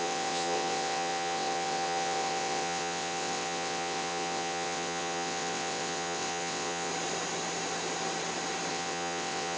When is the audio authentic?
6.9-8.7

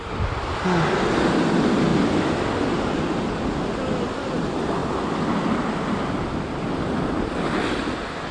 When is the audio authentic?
0.0-8.3